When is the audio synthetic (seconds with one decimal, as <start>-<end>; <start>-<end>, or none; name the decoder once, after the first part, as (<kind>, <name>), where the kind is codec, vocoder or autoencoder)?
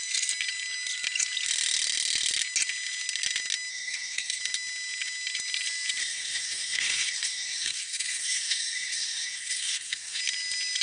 3.7-4.4 (codec, SNAC); 6.0-10.2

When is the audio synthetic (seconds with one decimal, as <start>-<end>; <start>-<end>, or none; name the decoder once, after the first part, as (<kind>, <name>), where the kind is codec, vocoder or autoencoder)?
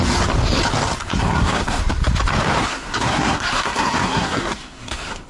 1.0-1.8 (codec, SNAC); 2.6-5.3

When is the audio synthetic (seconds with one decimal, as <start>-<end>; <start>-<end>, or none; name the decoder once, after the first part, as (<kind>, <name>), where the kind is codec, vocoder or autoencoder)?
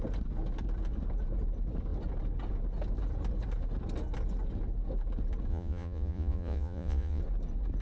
5.5-7.2 (vocoder, Vocos)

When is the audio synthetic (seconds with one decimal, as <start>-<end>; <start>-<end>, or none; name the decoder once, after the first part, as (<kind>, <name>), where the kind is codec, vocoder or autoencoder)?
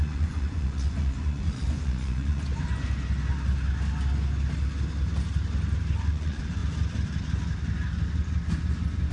0.0-2.5 (vocoder, Vocos); 6.1-6.6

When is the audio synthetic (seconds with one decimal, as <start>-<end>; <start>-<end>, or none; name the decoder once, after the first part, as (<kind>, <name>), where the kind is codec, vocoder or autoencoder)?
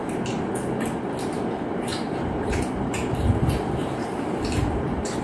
1.2-5.2 (vocoder, BigVGAN v2)